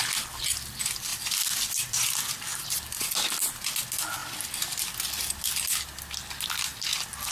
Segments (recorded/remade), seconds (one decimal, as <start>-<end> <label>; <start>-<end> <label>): 0.0-1.1 recorded; 1.1-1.7 remade; 1.7-2.5 recorded; 2.5-3.8 remade; 3.8-7.3 recorded